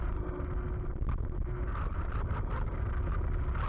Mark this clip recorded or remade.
recorded